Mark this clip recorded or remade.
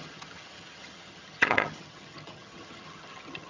remade